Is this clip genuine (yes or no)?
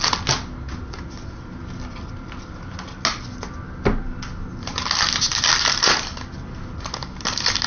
yes